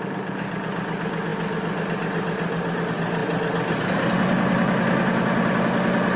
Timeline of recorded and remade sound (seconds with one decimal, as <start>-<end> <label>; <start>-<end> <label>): 0.0-6.2 recorded

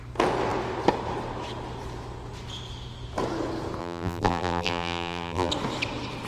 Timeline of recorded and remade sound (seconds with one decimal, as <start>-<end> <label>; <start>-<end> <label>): 0.0-3.8 recorded; 3.8-5.5 remade; 5.5-6.3 recorded

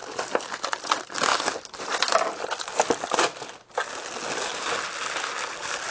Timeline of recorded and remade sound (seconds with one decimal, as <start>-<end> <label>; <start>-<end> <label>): 0.0-0.5 remade; 0.5-5.9 recorded